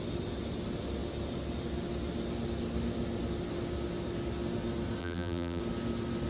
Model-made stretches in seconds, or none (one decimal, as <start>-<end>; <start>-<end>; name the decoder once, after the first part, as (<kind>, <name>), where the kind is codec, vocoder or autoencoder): 5.0-5.6 (vocoder, BigVGAN v2)